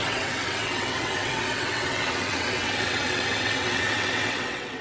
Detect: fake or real fake